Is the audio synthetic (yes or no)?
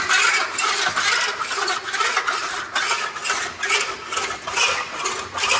no